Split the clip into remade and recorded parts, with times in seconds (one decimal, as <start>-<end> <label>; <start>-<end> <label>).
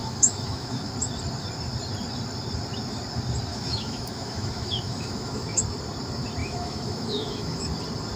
0.0-0.9 remade; 0.9-3.5 recorded; 3.5-5.6 remade; 5.6-6.4 recorded; 6.4-7.6 remade; 7.6-8.2 recorded